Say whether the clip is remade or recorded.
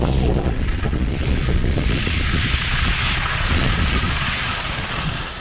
remade